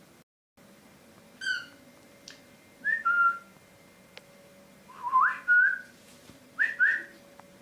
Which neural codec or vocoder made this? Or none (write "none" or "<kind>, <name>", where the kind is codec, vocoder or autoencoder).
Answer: none